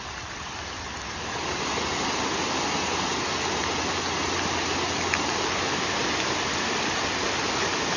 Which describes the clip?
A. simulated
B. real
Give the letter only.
B